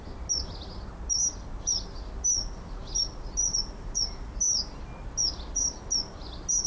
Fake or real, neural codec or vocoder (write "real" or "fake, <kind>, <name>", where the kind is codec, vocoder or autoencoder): real